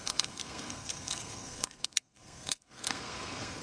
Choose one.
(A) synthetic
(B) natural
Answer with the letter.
A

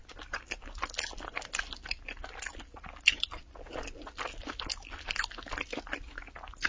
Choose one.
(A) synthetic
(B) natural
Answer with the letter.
B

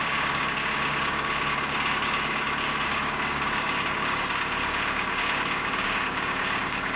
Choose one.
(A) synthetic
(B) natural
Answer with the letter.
A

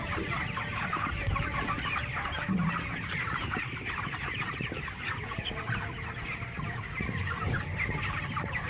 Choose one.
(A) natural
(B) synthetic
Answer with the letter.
B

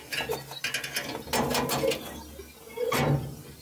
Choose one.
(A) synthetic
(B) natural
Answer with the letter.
B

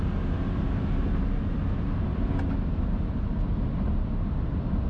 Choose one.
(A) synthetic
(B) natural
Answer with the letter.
B